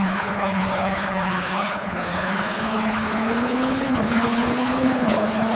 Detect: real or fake fake